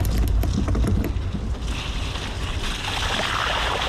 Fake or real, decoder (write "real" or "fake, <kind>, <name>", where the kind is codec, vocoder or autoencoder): real